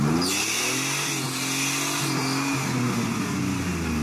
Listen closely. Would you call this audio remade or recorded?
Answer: recorded